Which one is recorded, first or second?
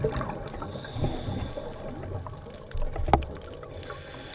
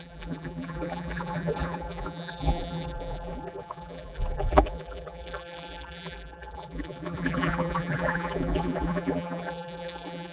first